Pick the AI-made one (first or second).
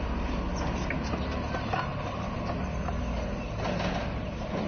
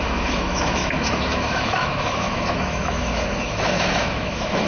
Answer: second